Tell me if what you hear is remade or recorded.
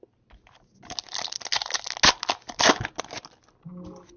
recorded